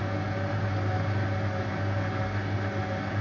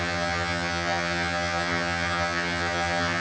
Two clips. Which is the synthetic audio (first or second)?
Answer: second